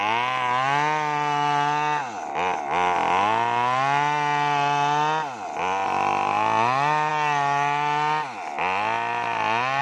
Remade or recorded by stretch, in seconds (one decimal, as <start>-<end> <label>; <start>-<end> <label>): 0.0-9.8 recorded